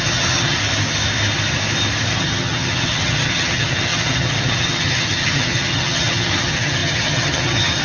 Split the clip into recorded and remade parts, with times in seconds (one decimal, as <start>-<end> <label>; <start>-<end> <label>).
0.0-0.6 remade; 0.6-2.1 recorded; 2.1-7.8 remade